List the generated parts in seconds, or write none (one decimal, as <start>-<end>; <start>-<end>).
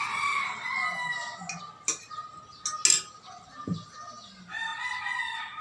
none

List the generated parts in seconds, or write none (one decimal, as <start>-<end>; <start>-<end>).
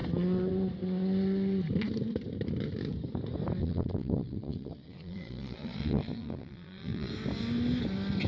3.6-7.1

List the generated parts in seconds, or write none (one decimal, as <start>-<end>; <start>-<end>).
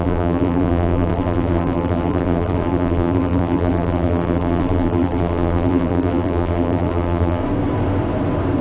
0.0-7.4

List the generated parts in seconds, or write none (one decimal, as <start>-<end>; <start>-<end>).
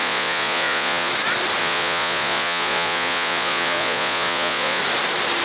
0.0-1.1; 1.6-4.8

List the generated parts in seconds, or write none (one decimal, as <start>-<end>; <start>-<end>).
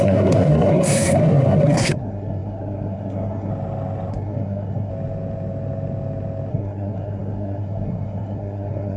0.0-3.5; 4.1-4.9; 6.5-9.0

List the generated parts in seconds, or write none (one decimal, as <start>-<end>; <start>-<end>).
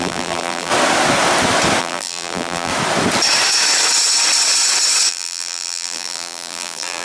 0.0-0.7; 1.8-2.7; 5.1-7.0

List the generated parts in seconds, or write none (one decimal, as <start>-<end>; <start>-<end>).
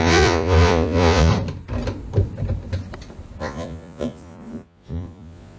0.0-1.3; 3.4-5.6